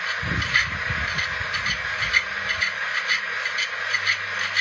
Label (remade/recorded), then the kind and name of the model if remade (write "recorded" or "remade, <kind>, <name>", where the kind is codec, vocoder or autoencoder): recorded